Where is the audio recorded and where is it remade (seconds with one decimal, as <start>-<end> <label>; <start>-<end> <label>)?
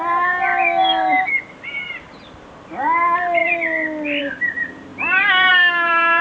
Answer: 0.0-0.5 remade; 0.5-1.4 recorded; 1.4-3.4 remade; 3.4-4.2 recorded; 4.2-6.2 remade